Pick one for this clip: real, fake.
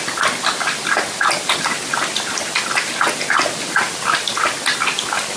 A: real